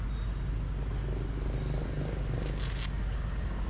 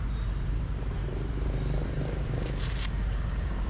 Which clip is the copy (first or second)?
second